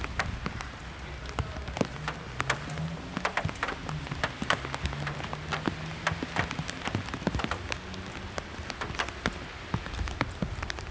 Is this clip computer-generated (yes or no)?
no